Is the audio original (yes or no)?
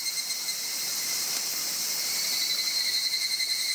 yes